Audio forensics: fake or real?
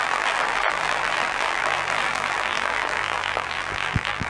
fake